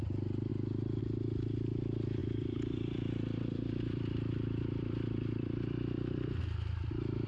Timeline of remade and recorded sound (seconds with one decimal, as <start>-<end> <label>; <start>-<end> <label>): 0.0-2.2 recorded; 2.2-6.4 remade; 6.4-7.3 recorded

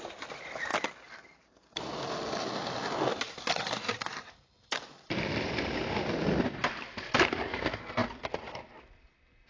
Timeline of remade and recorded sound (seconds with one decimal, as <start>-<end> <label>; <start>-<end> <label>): 0.0-0.7 recorded; 0.7-2.3 remade; 2.3-3.1 recorded; 3.1-7.1 remade; 7.1-8.0 recorded; 8.0-8.7 remade; 8.7-9.5 recorded

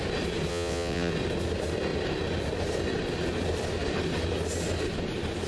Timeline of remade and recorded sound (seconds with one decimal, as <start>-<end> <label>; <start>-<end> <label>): 0.0-0.5 recorded; 0.5-1.1 remade; 1.1-5.5 recorded

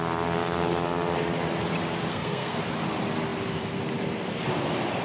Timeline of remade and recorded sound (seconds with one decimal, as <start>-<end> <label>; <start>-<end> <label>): 0.0-2.1 recorded; 2.1-2.6 remade; 2.6-5.0 recorded

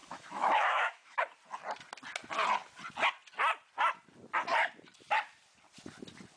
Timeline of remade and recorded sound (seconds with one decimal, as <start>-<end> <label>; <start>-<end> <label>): 0.0-1.2 remade; 1.2-6.4 recorded

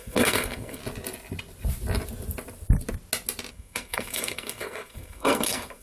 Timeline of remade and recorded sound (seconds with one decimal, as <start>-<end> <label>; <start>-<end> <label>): 0.0-0.8 remade; 0.8-3.5 recorded; 3.5-5.8 remade